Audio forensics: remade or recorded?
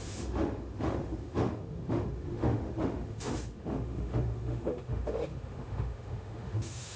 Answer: remade